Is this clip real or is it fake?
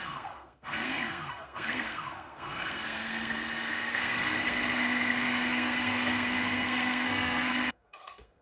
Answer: fake